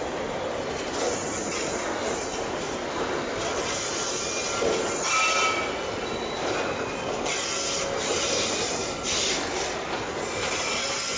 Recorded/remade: recorded